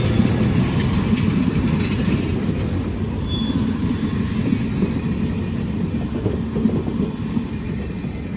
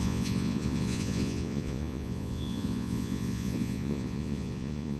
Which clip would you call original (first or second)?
first